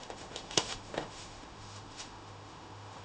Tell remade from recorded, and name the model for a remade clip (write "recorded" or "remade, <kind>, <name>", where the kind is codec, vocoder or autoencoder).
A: remade, autoencoder, DAC-VAE